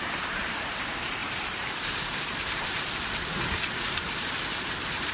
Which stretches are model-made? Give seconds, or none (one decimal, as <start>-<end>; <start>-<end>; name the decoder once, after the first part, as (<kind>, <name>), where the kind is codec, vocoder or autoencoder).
0.0-5.1 (vocoder, BigVGAN v2)